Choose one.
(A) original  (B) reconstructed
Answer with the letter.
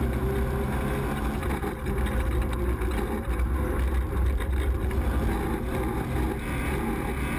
A